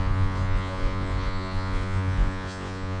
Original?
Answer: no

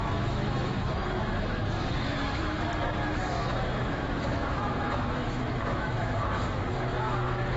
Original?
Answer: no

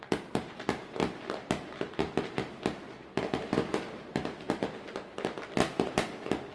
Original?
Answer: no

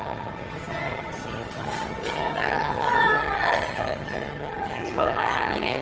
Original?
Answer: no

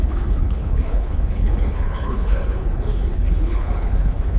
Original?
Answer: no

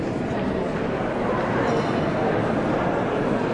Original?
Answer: yes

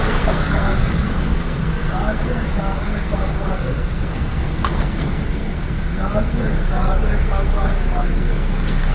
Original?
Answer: no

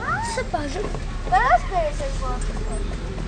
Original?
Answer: yes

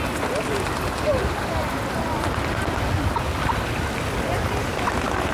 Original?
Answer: yes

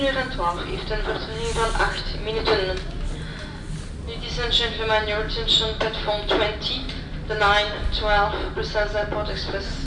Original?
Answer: yes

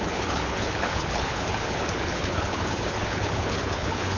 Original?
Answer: no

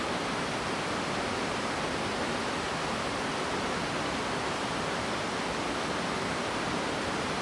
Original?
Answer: yes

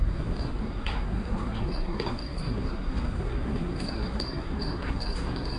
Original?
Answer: no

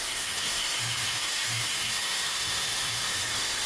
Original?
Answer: no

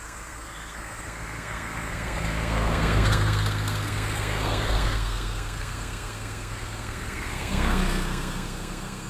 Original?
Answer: no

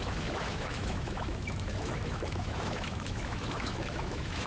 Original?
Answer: no